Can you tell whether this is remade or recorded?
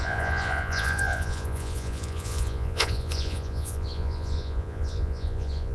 remade